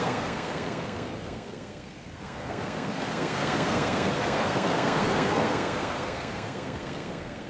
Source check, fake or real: fake